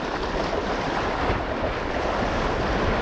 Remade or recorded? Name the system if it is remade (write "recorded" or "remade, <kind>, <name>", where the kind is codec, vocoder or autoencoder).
remade, vocoder, BigVGAN v2